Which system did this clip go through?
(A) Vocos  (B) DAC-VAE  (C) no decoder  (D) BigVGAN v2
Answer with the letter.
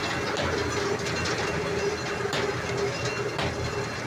C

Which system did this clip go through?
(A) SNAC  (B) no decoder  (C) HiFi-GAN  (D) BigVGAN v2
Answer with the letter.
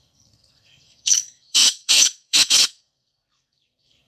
A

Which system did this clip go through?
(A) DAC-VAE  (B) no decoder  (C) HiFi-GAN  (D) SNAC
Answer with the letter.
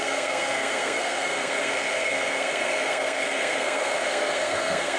D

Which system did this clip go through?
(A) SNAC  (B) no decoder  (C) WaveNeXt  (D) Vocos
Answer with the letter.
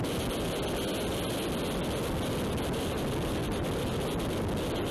B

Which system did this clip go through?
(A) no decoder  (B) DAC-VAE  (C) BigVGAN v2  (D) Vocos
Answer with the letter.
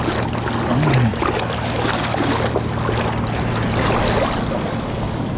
A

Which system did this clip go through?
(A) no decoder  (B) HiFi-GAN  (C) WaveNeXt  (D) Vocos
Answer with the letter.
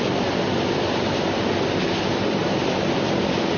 A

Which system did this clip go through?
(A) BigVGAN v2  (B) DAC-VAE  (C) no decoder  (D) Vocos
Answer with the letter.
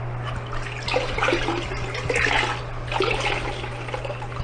C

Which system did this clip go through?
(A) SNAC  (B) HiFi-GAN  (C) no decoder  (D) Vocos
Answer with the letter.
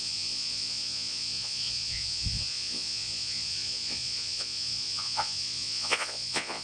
D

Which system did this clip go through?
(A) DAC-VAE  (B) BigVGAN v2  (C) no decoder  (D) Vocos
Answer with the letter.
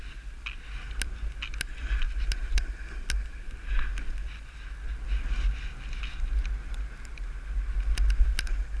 C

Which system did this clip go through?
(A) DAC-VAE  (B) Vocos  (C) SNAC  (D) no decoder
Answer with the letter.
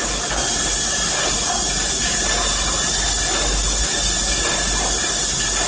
D